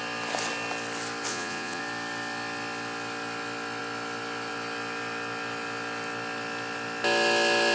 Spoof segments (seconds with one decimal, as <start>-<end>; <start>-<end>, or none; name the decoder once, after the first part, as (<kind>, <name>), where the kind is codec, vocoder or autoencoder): 1.3-1.8 (vocoder, Vocos)